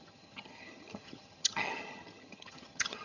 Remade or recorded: remade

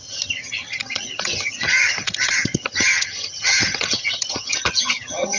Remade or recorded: remade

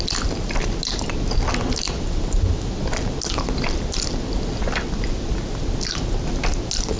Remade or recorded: recorded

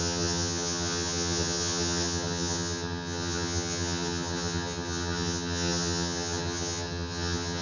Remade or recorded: remade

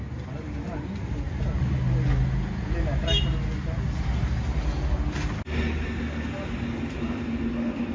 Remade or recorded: recorded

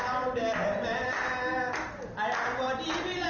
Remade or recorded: recorded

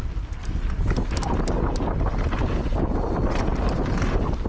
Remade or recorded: recorded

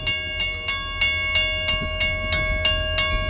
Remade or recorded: recorded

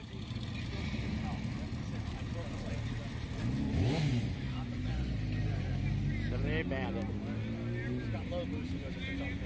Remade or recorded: recorded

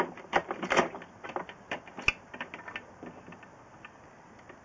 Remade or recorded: recorded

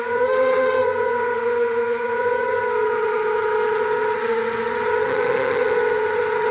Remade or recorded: remade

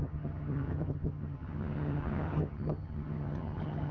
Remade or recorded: remade